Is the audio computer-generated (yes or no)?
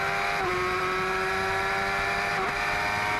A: no